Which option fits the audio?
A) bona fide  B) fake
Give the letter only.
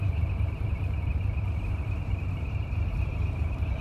B